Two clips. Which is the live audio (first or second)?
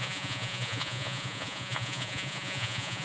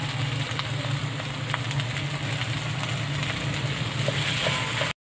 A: second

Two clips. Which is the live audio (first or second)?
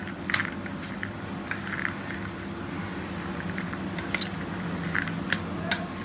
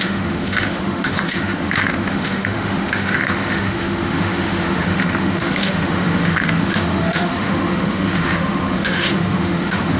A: first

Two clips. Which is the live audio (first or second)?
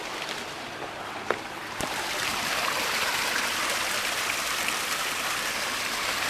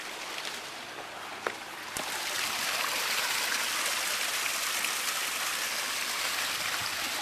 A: second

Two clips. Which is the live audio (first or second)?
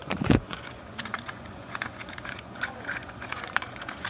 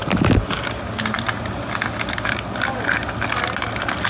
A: second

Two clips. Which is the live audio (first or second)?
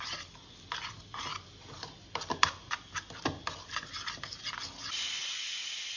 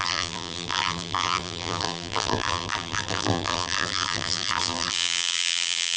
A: first